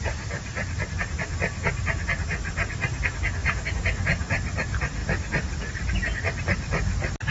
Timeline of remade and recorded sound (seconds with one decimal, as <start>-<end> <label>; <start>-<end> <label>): 0.0-3.4 recorded; 3.4-4.2 remade; 4.2-7.3 recorded

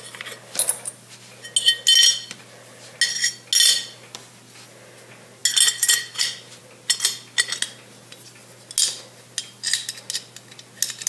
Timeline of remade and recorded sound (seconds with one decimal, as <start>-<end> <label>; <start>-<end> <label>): 0.0-11.1 recorded

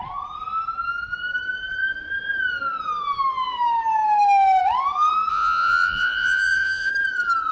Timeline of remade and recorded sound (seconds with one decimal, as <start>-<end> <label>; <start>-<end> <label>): 0.0-5.3 recorded; 5.3-6.9 remade; 6.9-7.5 recorded

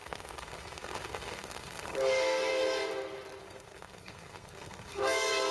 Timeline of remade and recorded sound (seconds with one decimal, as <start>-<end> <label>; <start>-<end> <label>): 0.0-2.5 remade; 2.5-3.4 recorded; 3.4-5.5 remade

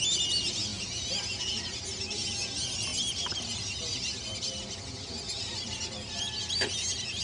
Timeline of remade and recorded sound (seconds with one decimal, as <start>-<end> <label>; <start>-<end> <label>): 0.0-7.2 recorded